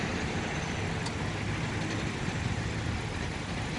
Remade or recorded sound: recorded